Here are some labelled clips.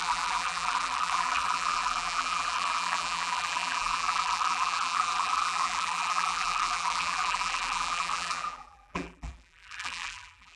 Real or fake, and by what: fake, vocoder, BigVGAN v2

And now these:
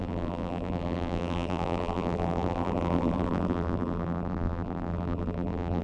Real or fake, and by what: fake, vocoder, BigVGAN v2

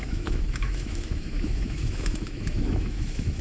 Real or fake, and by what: fake, autoencoder, DAC-VAE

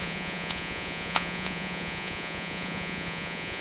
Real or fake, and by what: fake, vocoder, Vocos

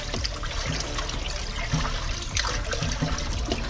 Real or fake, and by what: real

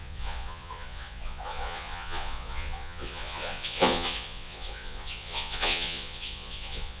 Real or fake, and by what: fake, vocoder, Vocos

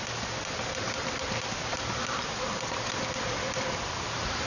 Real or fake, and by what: real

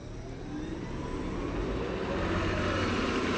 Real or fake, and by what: real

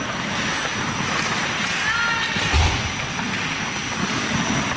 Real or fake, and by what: real